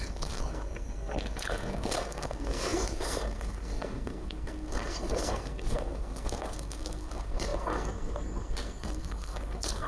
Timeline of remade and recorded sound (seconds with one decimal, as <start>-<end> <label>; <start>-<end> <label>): 0.0-9.9 remade